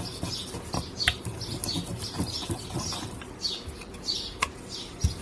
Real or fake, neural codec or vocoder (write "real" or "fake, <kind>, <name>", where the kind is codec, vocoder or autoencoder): real